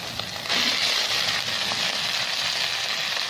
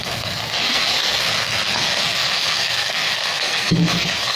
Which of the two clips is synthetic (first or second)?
second